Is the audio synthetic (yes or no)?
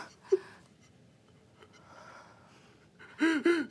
no